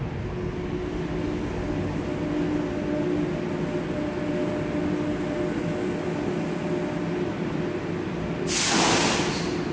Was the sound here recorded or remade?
recorded